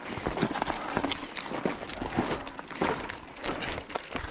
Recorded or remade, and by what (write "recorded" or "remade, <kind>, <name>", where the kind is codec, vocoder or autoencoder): recorded